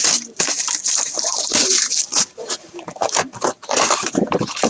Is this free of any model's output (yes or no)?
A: no